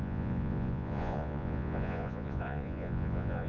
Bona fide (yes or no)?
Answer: no